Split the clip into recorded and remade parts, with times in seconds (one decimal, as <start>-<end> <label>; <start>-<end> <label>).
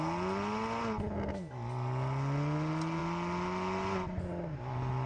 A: 0.0-5.1 recorded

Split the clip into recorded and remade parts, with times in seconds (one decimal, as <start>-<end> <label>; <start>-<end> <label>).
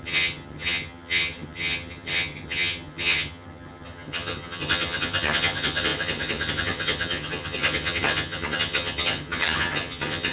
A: 0.0-10.3 remade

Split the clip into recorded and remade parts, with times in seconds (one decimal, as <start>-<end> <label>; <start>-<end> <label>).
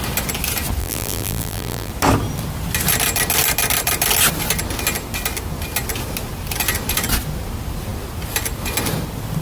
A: 0.0-0.8 recorded; 0.8-1.9 remade; 1.9-9.4 recorded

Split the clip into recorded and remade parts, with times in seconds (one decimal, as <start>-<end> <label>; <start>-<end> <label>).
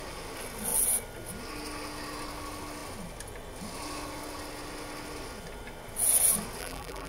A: 0.0-6.6 recorded; 6.6-7.1 remade